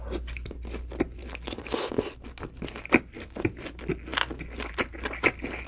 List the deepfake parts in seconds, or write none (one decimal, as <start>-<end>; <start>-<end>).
none